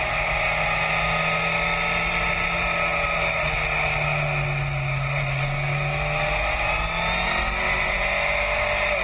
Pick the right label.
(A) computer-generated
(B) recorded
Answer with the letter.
B